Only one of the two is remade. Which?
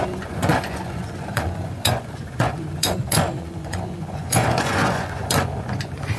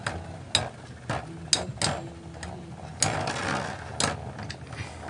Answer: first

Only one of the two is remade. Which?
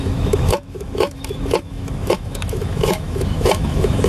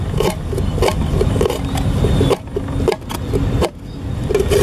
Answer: first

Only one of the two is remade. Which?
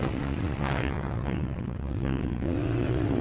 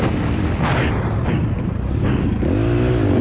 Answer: first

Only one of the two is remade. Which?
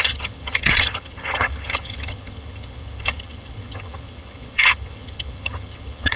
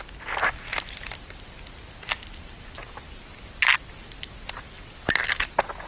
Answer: first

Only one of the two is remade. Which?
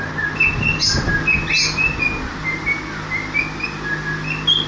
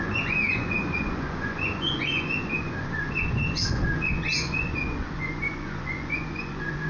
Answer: second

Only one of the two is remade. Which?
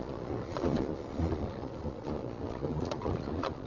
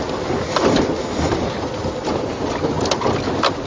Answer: first